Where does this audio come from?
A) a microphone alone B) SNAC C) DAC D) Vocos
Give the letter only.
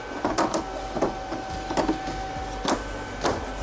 A